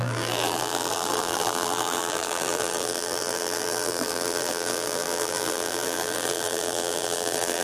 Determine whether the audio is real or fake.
fake